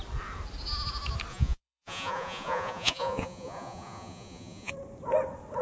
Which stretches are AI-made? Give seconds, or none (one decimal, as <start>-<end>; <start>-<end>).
1.3-4.7